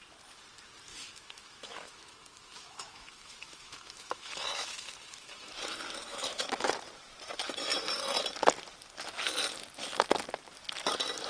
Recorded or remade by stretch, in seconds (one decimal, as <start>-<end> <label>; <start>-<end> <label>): 0.0-0.9 recorded; 0.9-5.5 remade; 5.5-6.1 recorded; 6.1-6.7 remade; 6.7-11.3 recorded